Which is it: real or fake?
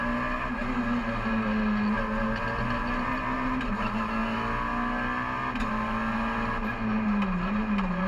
real